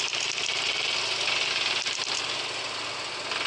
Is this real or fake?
real